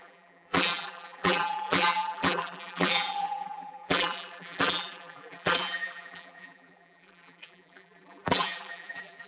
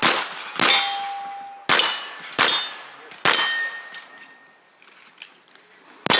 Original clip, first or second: second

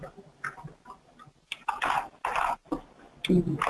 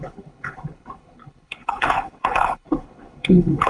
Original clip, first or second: first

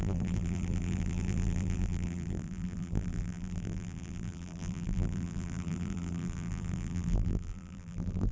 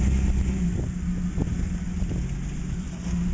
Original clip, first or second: second